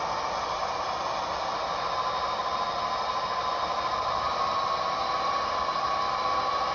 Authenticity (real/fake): real